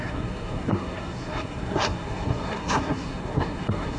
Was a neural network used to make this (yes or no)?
yes